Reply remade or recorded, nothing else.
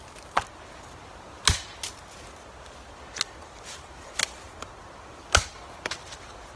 recorded